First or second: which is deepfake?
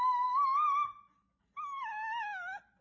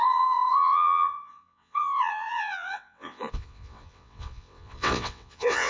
second